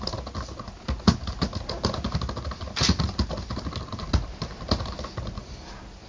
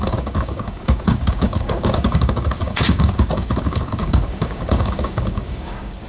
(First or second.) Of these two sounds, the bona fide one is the first